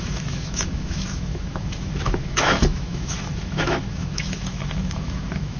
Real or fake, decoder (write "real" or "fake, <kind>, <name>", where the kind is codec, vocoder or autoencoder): fake, autoencoder, DAC-VAE